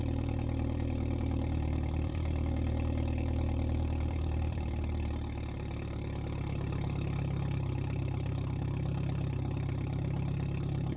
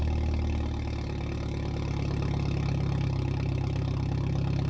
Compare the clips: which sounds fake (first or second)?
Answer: first